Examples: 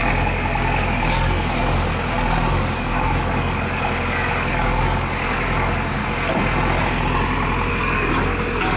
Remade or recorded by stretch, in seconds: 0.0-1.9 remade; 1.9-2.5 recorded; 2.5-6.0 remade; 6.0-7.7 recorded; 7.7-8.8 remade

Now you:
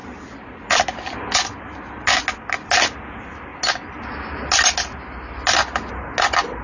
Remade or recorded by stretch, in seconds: 0.0-6.6 recorded